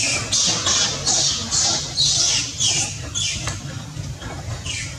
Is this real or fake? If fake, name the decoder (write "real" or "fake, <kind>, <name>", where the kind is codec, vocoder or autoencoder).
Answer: real